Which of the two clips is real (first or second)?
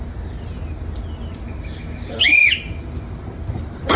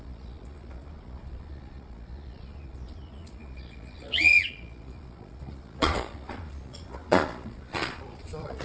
first